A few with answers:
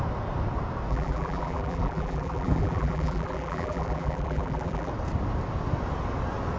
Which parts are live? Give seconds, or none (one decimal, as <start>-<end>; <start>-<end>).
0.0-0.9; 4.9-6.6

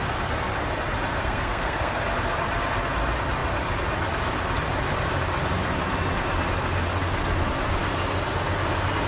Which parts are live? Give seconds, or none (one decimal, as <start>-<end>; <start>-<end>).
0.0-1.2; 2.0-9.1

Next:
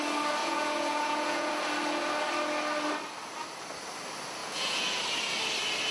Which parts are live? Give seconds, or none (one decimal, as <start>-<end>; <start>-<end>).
0.0-0.4; 1.5-4.4; 5.0-5.9